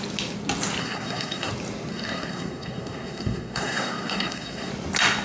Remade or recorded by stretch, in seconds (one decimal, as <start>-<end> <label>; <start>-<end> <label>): 0.0-0.8 recorded; 0.8-1.5 remade; 1.5-1.9 recorded; 1.9-4.7 remade; 4.7-5.2 recorded